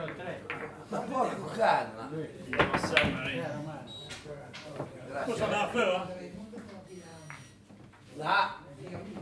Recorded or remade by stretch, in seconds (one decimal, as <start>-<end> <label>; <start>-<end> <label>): 0.0-4.1 recorded; 4.1-6.2 remade; 6.2-9.2 recorded